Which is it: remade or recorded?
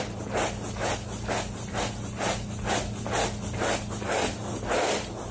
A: recorded